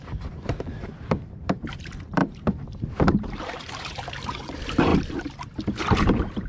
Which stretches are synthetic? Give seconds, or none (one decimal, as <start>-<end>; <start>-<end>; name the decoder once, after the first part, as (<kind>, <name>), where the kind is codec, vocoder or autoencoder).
0.0-4.9 (vocoder, BigVGAN v2); 5.8-6.5